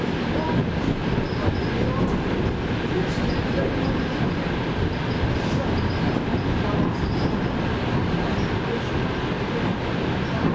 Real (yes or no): yes